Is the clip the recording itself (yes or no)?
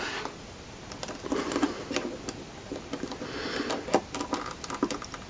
yes